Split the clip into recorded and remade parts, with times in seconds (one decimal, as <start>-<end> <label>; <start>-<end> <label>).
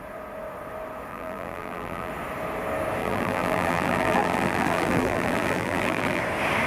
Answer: 0.0-1.1 recorded; 1.1-2.1 remade; 2.1-3.0 recorded; 3.0-6.2 remade; 6.2-6.7 recorded